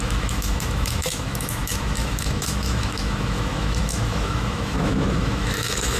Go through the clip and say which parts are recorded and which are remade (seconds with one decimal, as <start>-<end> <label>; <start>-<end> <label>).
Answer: 0.0-6.0 remade